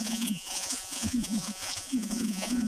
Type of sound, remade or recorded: remade